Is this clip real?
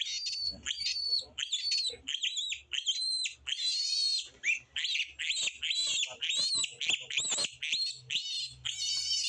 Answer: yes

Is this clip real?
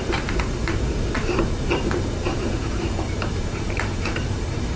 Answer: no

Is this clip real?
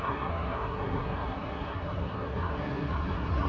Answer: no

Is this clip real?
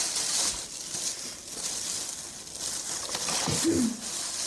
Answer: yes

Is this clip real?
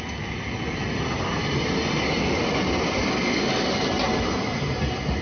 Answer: yes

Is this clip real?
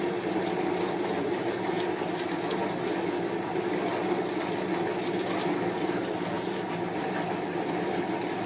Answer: yes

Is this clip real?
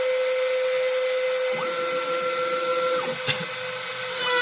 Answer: yes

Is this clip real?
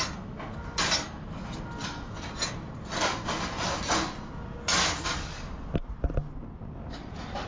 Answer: yes